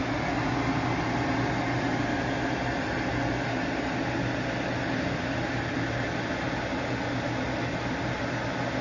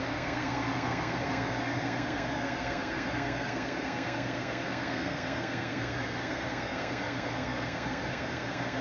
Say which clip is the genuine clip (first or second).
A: first